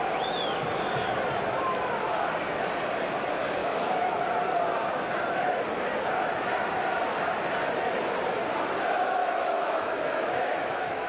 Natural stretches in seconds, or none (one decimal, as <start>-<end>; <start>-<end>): 0.0-3.6; 4.2-9.2

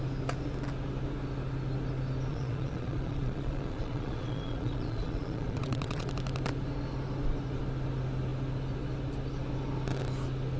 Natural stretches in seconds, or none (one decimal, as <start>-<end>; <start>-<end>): 0.0-2.3; 6.1-10.6